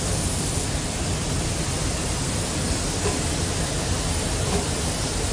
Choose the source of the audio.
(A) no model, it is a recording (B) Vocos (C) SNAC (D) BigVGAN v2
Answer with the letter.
A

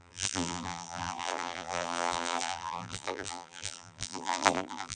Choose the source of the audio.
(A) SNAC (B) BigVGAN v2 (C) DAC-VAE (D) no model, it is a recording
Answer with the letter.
B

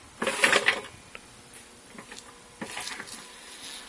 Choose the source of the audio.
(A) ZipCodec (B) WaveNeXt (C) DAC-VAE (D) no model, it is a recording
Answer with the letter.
D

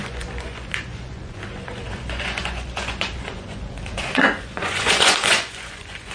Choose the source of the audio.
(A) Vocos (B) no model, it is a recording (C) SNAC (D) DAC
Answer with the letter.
A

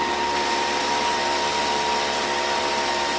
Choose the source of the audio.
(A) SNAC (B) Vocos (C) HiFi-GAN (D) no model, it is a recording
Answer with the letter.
D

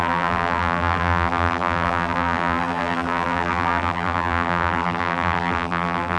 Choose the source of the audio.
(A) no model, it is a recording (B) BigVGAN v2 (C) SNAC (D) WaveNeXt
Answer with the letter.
B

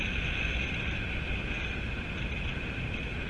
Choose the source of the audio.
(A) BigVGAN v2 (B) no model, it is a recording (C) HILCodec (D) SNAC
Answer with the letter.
B